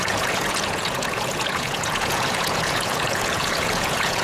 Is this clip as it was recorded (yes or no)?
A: no